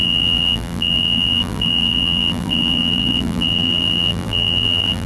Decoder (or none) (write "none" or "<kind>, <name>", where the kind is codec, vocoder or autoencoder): vocoder, BigVGAN v2